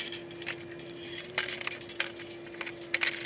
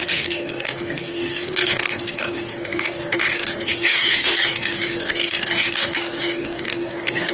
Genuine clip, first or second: first